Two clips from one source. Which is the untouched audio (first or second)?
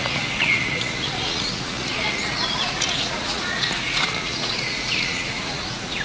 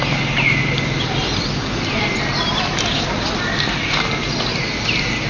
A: second